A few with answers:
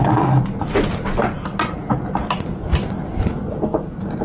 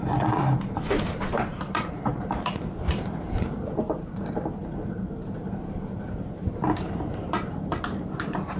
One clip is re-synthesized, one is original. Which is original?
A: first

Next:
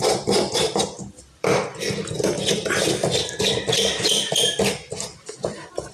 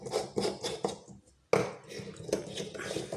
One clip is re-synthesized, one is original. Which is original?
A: second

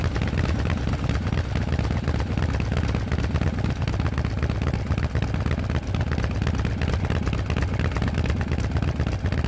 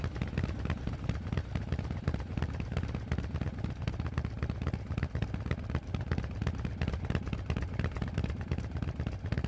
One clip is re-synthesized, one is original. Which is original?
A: first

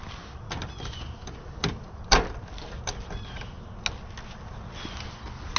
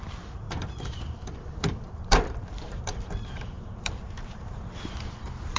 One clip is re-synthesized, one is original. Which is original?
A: first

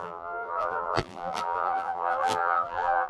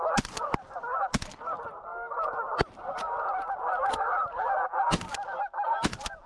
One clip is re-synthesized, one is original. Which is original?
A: second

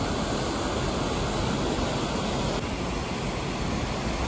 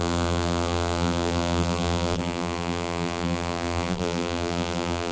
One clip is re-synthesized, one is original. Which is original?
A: first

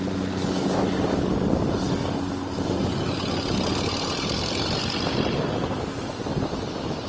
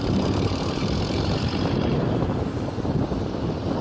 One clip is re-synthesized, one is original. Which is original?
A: first